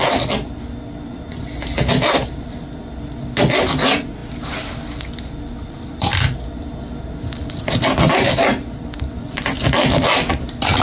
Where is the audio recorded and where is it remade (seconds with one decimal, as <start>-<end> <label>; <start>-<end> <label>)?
0.0-10.8 recorded